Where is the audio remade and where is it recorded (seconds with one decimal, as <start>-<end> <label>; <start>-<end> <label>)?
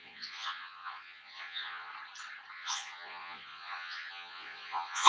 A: 0.0-1.9 remade; 1.9-2.5 recorded; 2.5-5.1 remade